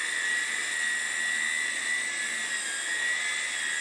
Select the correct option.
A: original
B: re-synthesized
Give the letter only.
A